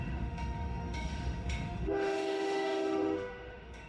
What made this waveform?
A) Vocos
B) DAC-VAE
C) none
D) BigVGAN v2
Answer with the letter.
B